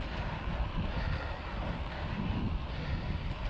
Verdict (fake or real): real